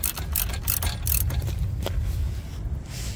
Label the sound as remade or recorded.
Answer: remade